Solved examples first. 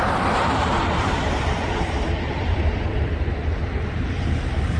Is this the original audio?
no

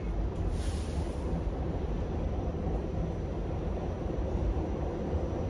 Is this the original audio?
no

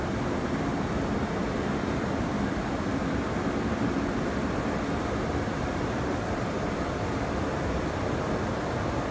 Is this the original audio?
no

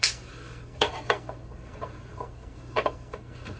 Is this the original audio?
no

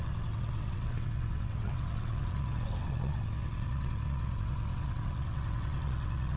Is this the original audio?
no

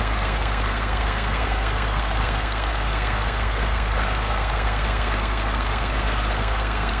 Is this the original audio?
no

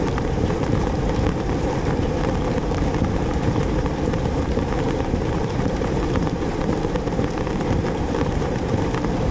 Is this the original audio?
no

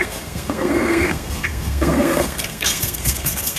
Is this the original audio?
no